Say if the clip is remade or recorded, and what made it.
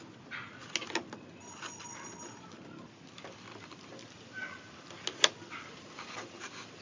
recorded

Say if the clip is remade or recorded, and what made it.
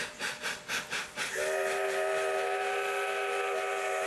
recorded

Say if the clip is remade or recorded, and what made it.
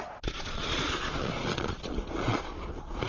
remade, vocoder, Vocos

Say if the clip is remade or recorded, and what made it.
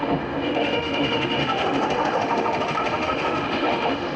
remade, autoencoder, DAC-VAE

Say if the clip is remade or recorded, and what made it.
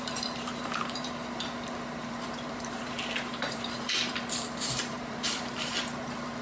remade, vocoder, BigVGAN v2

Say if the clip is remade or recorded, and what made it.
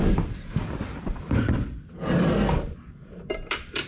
remade, vocoder, BigVGAN v2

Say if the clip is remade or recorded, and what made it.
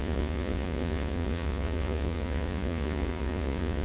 remade, vocoder, Vocos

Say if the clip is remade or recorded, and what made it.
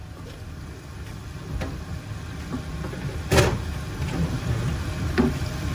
recorded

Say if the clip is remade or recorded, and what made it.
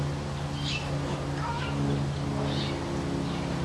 remade, vocoder, BigVGAN v2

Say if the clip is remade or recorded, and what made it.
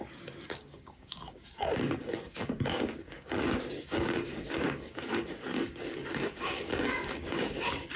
remade, codec, DAC